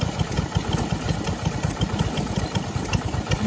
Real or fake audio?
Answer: fake